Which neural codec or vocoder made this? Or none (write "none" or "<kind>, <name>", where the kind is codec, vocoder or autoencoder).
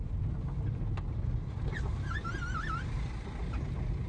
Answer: none